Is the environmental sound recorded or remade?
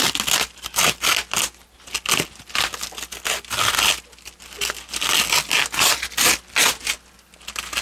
recorded